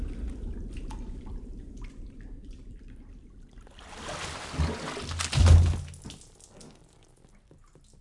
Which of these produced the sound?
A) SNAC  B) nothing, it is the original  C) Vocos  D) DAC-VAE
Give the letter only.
B